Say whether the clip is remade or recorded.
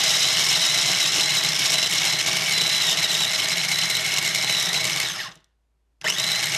recorded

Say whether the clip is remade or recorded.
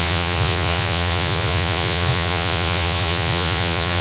remade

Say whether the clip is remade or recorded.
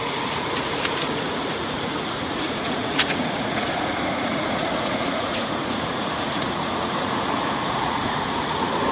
remade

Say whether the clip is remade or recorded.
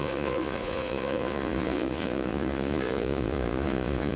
remade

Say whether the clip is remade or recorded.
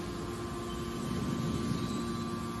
recorded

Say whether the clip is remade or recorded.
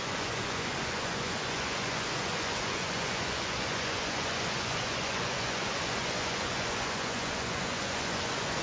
remade